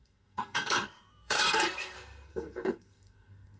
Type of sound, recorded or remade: remade